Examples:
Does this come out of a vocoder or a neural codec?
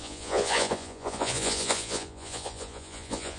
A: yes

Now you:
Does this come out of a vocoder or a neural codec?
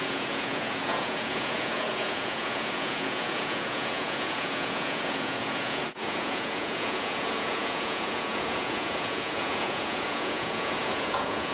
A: yes